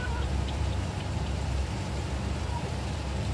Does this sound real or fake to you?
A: fake